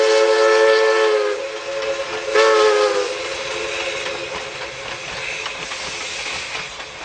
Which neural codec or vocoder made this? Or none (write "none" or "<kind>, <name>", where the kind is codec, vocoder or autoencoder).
none